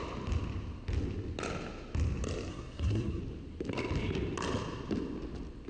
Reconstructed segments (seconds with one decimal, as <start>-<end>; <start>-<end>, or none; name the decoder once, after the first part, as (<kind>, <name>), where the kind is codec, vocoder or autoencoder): 2.5-3.2 (codec, SNAC)